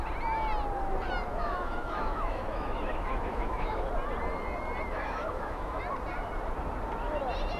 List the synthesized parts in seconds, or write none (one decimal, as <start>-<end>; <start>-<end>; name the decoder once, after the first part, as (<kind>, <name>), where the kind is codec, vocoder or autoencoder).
1.3-3.9 (autoencoder, DAC-VAE); 4.9-5.8